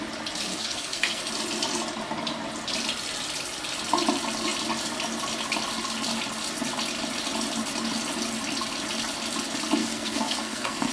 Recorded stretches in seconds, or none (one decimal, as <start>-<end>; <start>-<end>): 0.0-0.5; 1.3-9.8